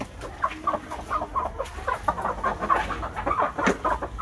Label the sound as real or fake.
real